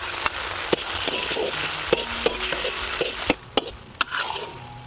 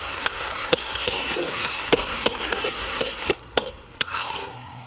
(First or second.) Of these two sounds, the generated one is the second